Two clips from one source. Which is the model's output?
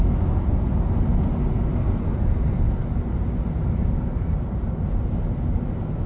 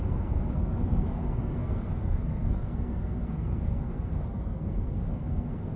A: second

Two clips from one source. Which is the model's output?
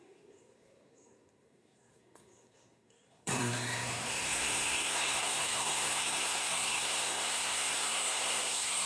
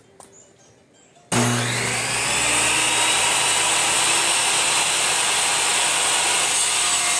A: first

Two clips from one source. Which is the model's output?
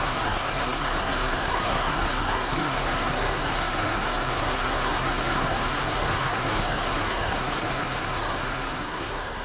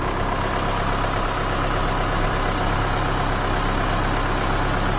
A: first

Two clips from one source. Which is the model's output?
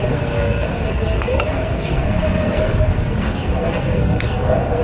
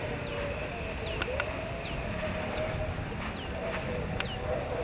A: first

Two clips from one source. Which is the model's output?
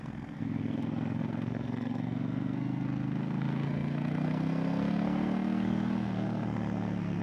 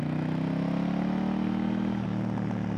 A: first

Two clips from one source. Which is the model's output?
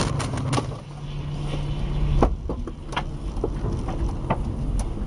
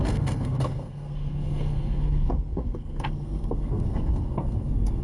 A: second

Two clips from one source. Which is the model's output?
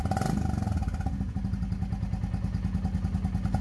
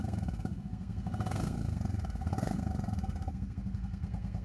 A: second